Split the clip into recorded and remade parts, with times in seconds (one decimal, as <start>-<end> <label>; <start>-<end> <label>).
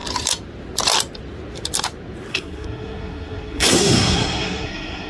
0.0-2.3 recorded; 2.3-5.1 remade